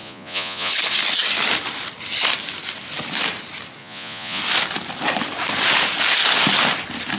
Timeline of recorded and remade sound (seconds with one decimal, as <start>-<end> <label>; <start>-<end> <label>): 0.0-0.7 remade; 0.7-3.8 recorded; 3.8-4.4 remade; 4.4-7.2 recorded